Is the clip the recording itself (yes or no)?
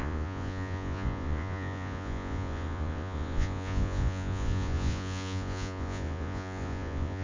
no